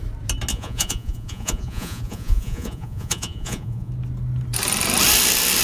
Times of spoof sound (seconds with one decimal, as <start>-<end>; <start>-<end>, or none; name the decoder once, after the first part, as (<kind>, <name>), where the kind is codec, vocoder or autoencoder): 0.5-3.9 (vocoder, Vocos)